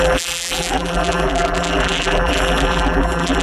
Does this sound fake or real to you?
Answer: fake